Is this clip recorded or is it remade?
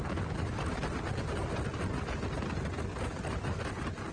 recorded